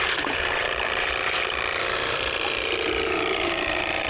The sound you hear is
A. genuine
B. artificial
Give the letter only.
B